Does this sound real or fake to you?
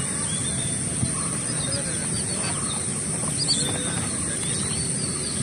real